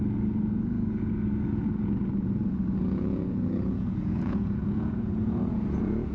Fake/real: fake